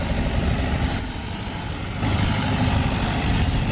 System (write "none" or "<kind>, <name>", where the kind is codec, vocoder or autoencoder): none